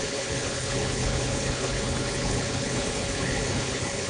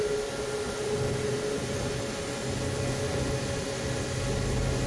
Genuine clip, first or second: second